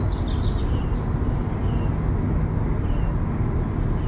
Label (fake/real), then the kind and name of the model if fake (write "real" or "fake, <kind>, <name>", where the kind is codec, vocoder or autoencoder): real